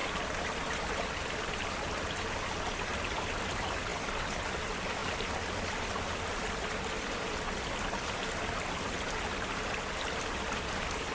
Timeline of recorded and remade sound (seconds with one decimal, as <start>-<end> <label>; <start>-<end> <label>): 0.0-11.1 recorded